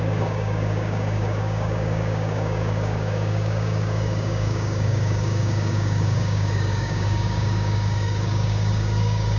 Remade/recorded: remade